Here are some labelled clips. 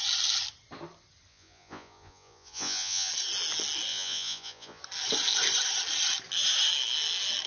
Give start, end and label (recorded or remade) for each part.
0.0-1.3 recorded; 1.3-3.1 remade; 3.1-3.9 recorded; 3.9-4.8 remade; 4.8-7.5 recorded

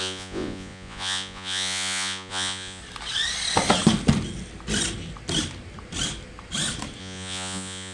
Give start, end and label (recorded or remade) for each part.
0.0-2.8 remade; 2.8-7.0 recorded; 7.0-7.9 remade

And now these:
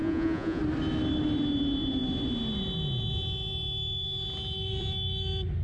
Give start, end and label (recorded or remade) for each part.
0.0-0.6 remade; 0.6-5.6 recorded

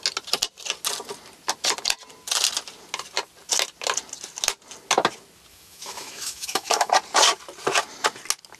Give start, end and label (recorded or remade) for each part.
0.0-5.5 recorded; 5.5-6.9 remade; 6.9-8.6 recorded